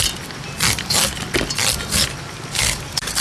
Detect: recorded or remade recorded